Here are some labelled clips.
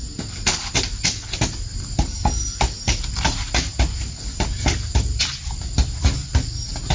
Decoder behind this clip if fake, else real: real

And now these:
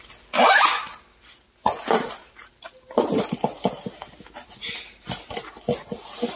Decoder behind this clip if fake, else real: real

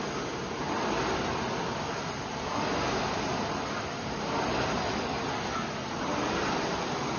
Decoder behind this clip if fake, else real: real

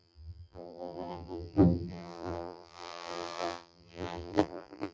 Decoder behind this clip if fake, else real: fake, vocoder, BigVGAN v2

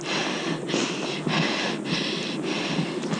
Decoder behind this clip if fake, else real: real